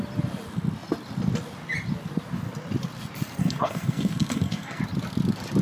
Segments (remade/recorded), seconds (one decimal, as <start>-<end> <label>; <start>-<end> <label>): 0.0-3.4 recorded; 3.4-4.8 remade; 4.8-5.6 recorded